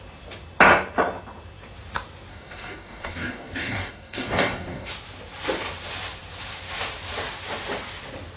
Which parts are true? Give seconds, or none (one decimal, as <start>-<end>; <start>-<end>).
0.0-2.3; 4.9-8.4